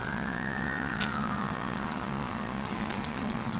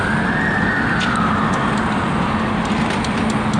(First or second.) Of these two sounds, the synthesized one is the first